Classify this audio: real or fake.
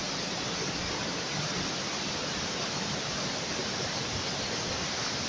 real